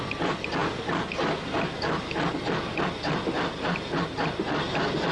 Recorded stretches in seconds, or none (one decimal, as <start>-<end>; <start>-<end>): 0.0-5.1

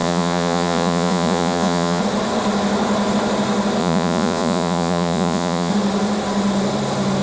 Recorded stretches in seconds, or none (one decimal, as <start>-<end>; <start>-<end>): 2.0-3.8; 5.7-7.2

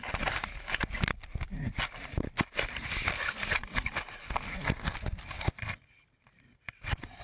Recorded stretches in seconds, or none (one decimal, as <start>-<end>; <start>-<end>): 0.0-7.2

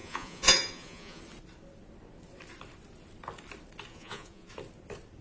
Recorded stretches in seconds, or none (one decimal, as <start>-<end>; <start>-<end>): 1.2-3.9; 4.5-5.2

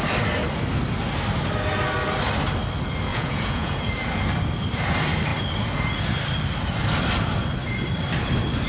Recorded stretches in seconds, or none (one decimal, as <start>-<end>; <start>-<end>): 0.0-3.1; 3.9-8.7

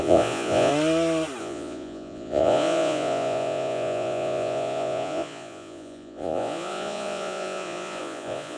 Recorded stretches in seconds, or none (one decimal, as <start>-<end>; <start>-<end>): 0.7-1.4